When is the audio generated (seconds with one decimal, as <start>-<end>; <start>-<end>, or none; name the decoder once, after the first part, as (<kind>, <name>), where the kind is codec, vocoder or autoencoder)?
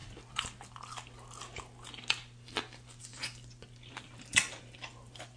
none